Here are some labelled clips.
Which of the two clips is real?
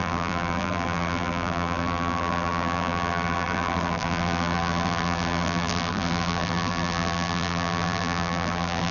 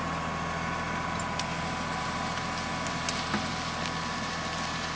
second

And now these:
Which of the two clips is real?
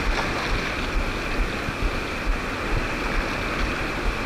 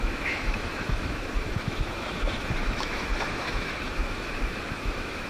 first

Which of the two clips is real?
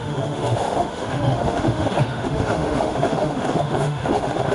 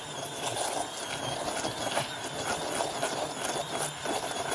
second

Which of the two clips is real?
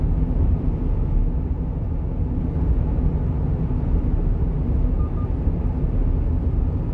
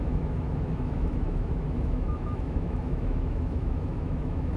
first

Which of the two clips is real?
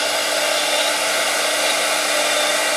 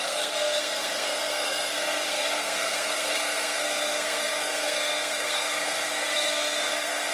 first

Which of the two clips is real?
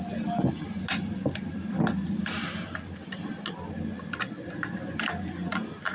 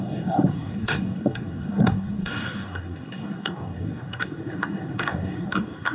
first